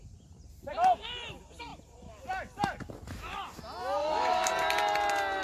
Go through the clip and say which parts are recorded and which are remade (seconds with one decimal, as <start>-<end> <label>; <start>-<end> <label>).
0.0-4.0 recorded; 4.0-4.5 remade; 4.5-5.4 recorded